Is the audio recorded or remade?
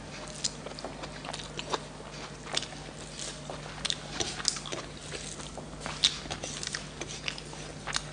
recorded